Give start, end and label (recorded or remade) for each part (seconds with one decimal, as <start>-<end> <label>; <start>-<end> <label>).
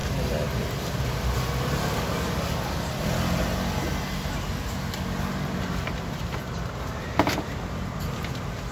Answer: 0.0-8.7 recorded